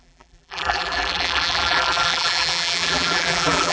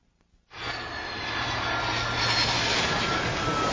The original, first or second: second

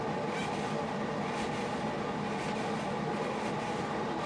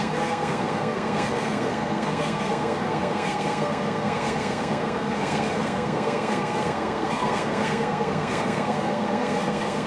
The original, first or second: first